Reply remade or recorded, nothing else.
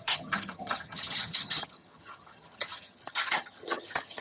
remade